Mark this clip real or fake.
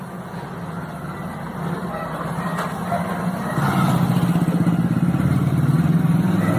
real